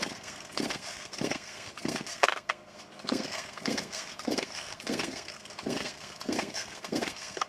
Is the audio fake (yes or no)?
yes